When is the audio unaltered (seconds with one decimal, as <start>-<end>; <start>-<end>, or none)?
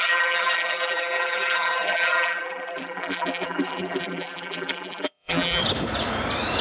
5.6-6.6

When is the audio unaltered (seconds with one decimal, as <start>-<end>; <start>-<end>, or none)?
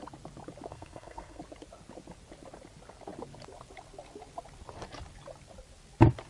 0.0-0.7; 1.4-6.3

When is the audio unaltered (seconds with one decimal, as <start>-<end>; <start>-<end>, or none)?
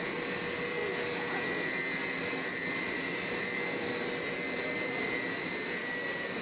0.0-6.4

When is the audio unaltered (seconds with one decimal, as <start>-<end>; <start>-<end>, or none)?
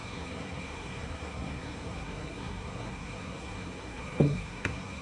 none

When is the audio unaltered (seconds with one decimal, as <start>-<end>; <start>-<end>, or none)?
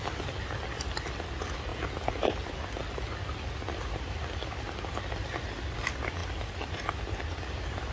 0.0-7.9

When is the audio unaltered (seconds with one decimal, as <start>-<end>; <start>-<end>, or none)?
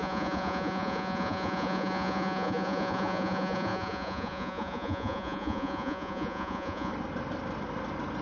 6.9-8.2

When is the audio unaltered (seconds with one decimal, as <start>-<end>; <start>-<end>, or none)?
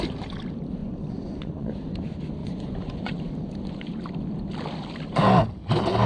0.0-0.8; 1.7-2.4; 3.1-6.1